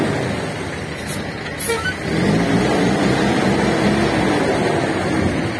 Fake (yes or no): no